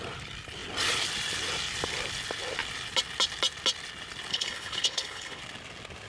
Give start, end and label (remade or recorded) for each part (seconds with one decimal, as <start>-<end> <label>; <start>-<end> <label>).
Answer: 0.0-4.3 recorded; 4.3-5.4 remade; 5.4-6.1 recorded